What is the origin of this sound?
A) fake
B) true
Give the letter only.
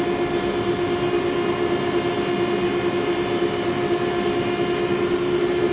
B